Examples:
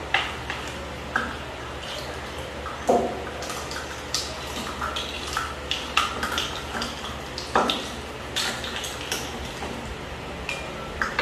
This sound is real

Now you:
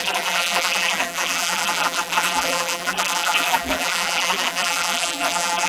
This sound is fake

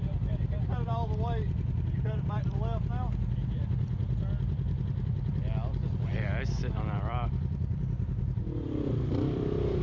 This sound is fake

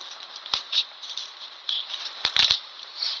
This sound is fake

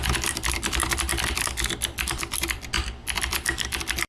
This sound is fake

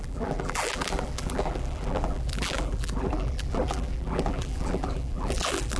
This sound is fake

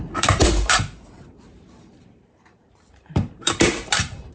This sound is fake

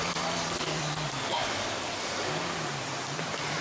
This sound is fake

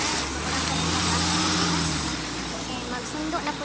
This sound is real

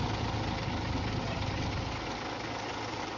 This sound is real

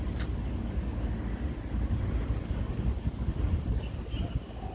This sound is real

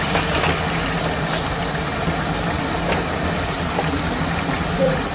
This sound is fake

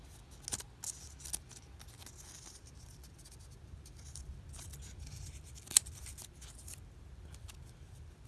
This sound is real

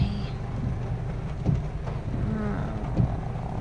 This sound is real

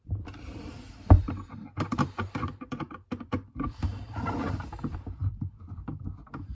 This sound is fake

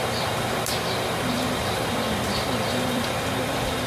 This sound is fake